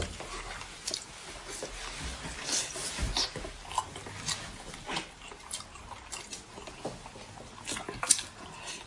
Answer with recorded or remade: recorded